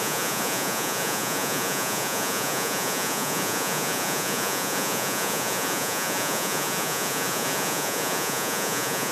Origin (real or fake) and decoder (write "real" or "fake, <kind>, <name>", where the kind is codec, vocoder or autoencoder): fake, vocoder, Vocos